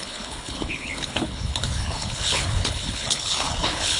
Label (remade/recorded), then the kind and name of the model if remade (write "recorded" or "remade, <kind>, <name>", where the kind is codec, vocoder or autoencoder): remade, codec, HILCodec